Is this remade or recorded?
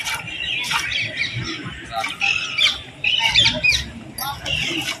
recorded